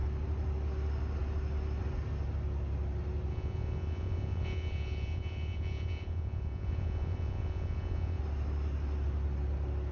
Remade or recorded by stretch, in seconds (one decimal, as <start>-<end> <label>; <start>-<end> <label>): 0.0-3.3 recorded; 3.3-8.2 remade; 8.2-9.9 recorded